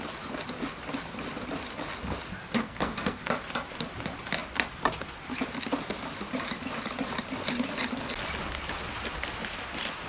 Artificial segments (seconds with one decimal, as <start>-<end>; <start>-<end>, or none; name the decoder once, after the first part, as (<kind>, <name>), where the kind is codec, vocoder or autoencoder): 2.6-3.2 (codec, SNAC)